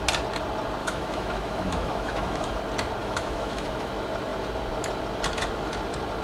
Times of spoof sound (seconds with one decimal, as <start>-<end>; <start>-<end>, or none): 0.8-2.6; 3.0-3.9